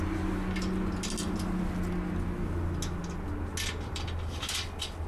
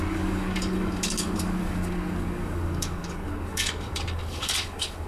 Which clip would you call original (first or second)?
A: first